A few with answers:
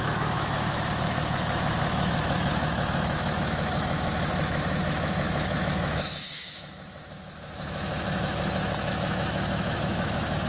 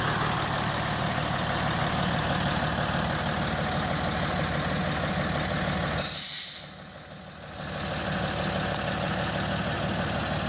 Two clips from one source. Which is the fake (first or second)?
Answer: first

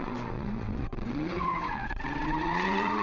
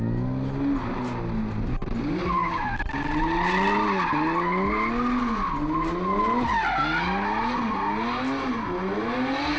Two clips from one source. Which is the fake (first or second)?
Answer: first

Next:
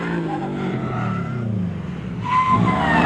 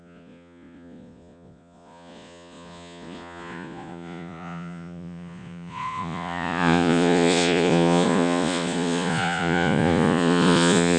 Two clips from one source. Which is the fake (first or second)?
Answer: second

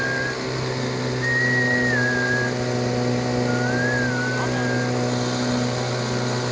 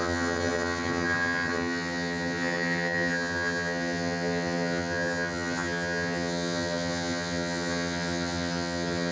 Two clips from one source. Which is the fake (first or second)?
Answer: second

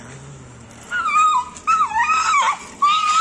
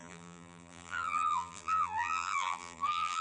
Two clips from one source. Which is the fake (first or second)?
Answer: second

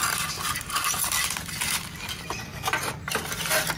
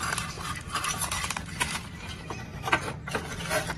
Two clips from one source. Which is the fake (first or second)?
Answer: second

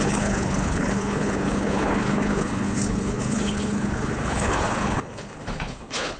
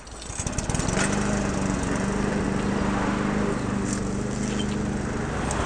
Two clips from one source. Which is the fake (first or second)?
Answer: first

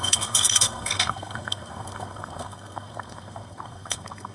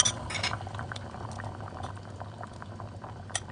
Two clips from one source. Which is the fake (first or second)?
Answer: first